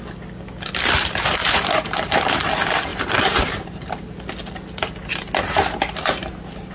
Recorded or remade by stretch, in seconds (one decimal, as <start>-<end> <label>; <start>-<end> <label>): 0.0-1.4 recorded; 1.4-2.5 remade; 2.5-2.9 recorded; 2.9-3.9 remade; 3.9-6.7 recorded